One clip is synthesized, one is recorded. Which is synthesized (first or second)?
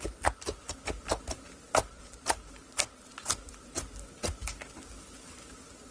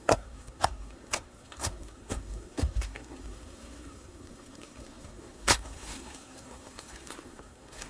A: second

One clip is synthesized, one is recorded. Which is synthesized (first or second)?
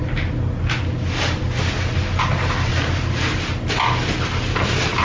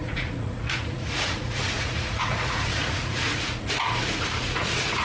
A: second